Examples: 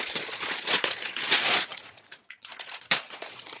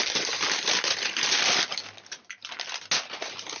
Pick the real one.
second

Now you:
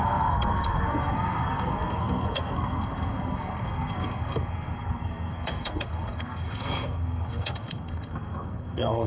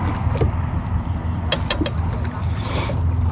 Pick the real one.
second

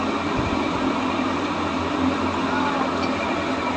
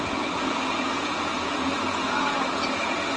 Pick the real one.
first